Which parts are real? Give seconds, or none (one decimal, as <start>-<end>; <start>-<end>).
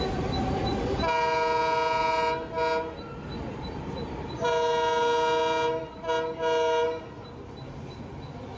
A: 0.0-8.6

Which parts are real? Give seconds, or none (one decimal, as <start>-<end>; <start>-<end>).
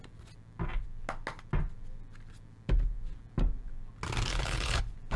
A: 0.0-4.3; 4.8-5.2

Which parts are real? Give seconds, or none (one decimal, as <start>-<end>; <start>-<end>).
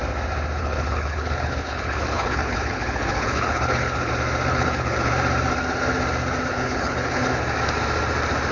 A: 0.0-0.6; 4.1-4.5; 5.1-6.5; 7.3-8.5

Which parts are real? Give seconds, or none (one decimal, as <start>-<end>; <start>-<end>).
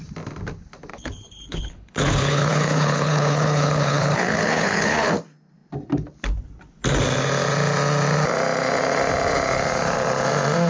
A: 0.0-0.9; 5.1-10.7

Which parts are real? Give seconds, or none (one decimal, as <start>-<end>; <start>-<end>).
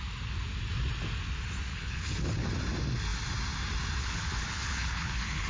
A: 0.0-1.7; 2.5-4.0